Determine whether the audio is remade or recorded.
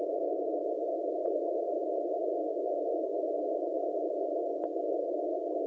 recorded